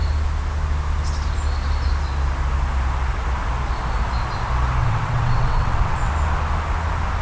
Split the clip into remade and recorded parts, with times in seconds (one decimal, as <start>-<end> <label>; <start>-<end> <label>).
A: 0.0-4.8 recorded; 4.8-6.1 remade; 6.1-7.2 recorded